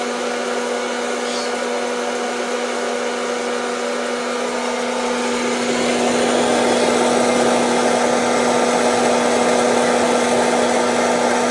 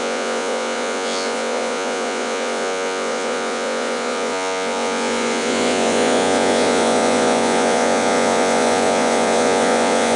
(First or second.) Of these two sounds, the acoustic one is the first